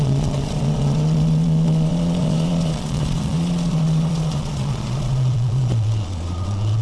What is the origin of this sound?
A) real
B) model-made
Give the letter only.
B